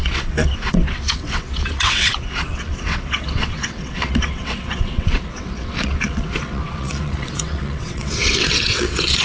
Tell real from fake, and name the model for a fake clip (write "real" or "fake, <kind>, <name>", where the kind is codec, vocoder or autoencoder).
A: fake, vocoder, WaveNeXt